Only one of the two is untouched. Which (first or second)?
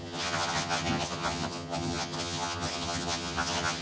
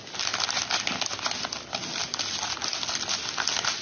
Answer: second